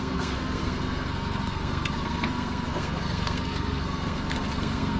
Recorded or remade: remade